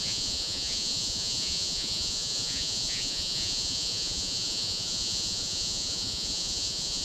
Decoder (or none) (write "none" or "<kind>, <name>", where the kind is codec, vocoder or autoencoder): vocoder, Vocos